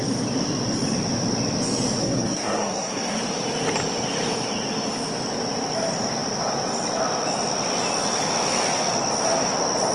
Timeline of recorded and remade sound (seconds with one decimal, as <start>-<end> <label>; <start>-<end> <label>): 0.0-2.0 recorded; 2.0-3.2 remade; 3.2-9.9 recorded

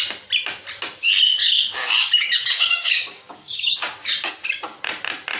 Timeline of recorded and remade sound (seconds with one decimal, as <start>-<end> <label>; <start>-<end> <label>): 0.0-1.4 recorded; 1.4-4.3 remade; 4.3-5.4 recorded